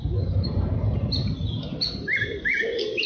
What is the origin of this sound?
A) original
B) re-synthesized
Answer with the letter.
B